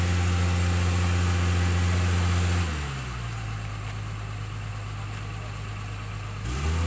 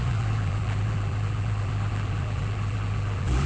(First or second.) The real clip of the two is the first